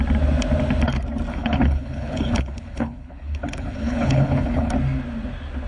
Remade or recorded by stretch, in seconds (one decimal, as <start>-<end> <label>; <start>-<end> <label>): 0.0-1.3 recorded; 1.3-4.7 remade; 4.7-5.7 recorded